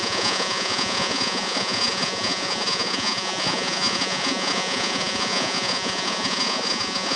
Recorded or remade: remade